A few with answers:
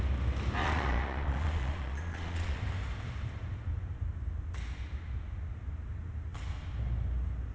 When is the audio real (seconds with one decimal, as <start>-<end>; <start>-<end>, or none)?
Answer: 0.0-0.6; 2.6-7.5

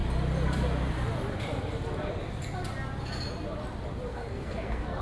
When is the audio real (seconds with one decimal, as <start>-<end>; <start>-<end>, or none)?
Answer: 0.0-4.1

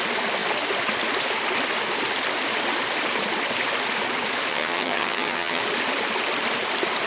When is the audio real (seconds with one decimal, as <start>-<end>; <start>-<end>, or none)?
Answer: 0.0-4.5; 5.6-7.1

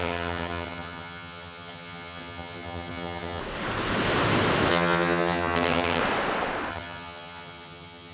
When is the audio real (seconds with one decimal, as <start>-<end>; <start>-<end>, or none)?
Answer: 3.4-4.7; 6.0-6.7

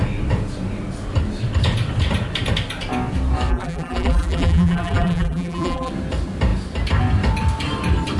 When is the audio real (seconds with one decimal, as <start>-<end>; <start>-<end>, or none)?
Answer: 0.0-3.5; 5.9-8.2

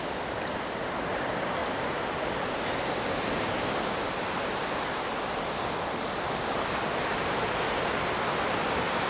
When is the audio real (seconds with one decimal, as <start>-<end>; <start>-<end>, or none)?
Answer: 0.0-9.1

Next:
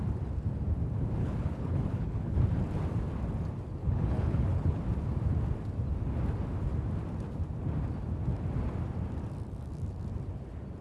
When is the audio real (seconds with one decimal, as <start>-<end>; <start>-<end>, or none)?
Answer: 0.0-1.2; 2.4-3.8; 4.8-10.8

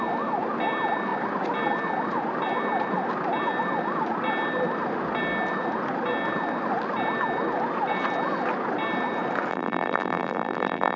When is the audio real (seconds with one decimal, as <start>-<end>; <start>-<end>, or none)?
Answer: 0.0-9.5